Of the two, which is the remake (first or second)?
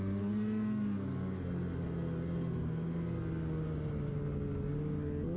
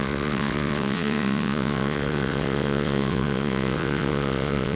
second